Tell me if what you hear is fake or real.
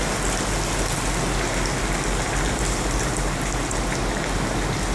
real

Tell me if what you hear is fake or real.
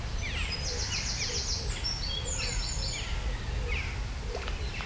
real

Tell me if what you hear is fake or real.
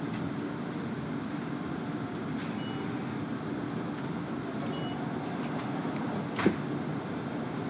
real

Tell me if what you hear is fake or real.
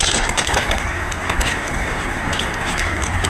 fake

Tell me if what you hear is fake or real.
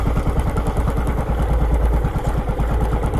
real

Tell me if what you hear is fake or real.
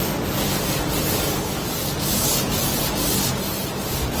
real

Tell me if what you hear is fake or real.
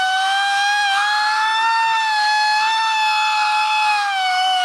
fake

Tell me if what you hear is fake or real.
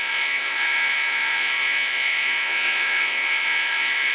fake